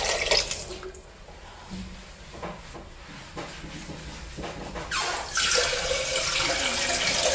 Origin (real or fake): real